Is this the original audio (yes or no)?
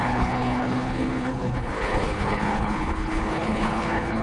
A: no